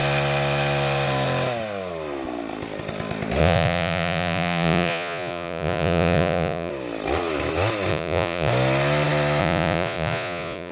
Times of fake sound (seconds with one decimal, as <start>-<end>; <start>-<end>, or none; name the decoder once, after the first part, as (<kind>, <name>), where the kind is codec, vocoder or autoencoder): 3.4-6.7 (vocoder, Vocos); 7.9-8.5; 9.4-10.7